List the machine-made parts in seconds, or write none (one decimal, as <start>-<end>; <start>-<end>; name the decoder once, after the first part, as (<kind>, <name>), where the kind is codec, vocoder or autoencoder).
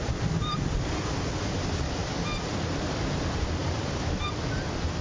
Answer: 3.6-4.2 (vocoder, BigVGAN v2)